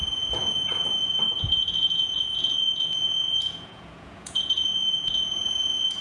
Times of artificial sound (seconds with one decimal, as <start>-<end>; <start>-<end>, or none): 0.0-6.0